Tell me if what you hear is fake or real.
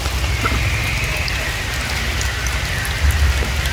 real